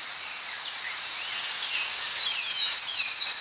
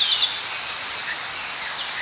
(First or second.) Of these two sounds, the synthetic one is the first